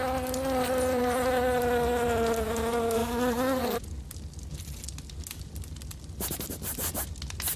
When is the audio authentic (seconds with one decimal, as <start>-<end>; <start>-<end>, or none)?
0.0-7.6